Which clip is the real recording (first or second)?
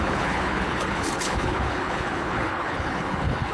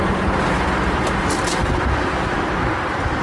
second